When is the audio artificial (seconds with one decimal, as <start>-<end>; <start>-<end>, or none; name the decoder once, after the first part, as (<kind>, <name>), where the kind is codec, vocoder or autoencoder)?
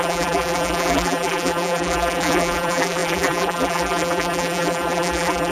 0.0-5.5 (vocoder, BigVGAN v2)